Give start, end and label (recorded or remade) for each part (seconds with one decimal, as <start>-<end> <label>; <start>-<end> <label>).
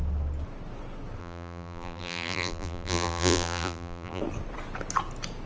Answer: 0.0-1.2 recorded; 1.2-4.2 remade; 4.2-5.5 recorded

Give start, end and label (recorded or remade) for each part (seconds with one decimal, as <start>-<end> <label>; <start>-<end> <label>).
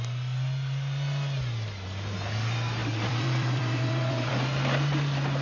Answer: 0.0-2.8 recorded; 2.8-4.3 remade; 4.3-5.4 recorded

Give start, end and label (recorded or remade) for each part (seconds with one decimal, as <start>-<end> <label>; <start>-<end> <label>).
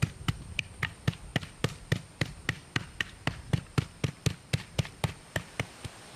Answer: 0.0-6.2 recorded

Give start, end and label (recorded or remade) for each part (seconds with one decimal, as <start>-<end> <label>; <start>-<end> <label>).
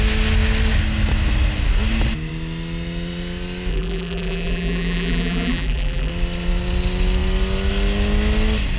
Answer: 0.0-3.7 recorded; 3.7-6.1 remade; 6.1-8.8 recorded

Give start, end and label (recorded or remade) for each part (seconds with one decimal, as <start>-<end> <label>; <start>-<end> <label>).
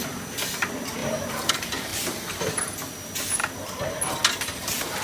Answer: 0.0-1.0 recorded; 1.0-1.5 remade; 1.5-1.9 recorded; 1.9-2.5 remade; 2.5-5.0 recorded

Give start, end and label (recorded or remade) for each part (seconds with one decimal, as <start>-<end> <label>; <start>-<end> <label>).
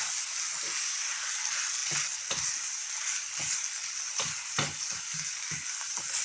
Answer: 0.0-6.2 recorded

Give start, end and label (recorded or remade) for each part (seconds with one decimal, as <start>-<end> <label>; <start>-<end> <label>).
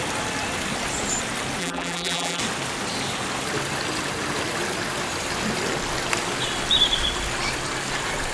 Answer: 0.0-1.6 recorded; 1.6-2.4 remade; 2.4-8.3 recorded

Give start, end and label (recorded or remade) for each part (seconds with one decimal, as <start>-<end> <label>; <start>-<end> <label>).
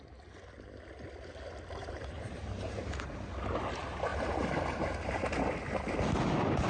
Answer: 0.0-1.8 recorded; 1.8-3.1 remade; 3.1-4.1 recorded; 4.1-5.6 remade; 5.6-6.7 recorded